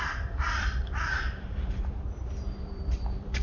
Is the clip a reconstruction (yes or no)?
yes